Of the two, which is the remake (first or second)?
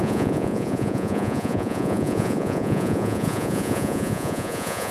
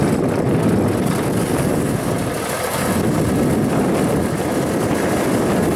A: first